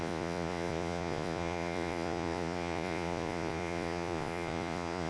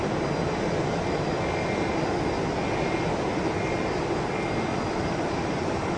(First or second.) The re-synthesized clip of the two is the first